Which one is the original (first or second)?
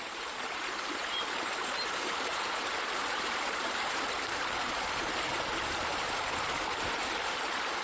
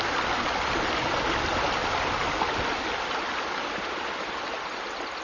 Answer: second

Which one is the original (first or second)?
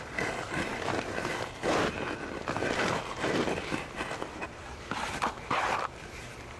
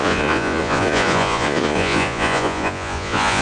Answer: first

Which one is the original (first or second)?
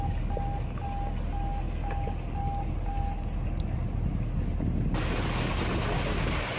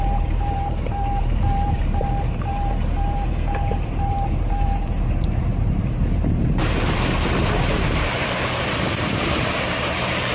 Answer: first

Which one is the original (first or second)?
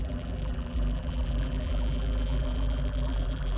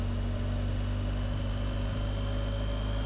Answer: second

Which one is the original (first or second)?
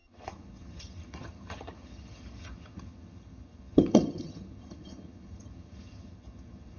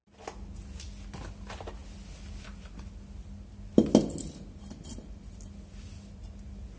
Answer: second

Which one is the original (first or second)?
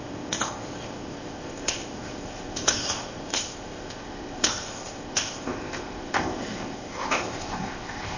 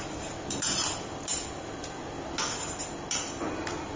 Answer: second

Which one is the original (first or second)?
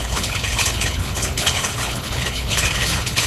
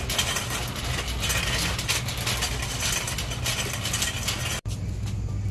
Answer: second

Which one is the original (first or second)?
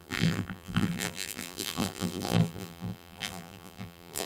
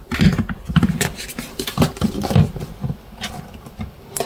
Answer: second